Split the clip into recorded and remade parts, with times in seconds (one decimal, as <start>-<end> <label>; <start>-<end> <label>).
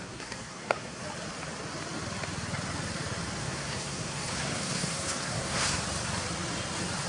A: 0.0-1.0 remade; 1.0-3.4 recorded; 3.4-5.8 remade; 5.8-7.1 recorded